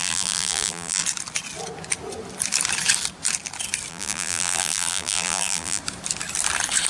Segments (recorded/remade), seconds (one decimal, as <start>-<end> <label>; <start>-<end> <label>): 0.0-1.0 remade; 1.0-3.9 recorded; 3.9-5.8 remade; 5.8-6.9 recorded